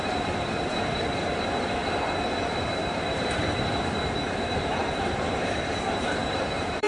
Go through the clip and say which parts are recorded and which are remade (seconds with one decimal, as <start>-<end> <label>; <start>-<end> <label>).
0.0-1.8 remade; 1.8-2.5 recorded; 2.5-6.9 remade